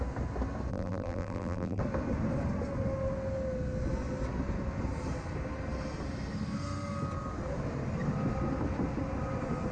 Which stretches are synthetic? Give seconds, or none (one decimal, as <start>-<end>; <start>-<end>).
0.7-1.8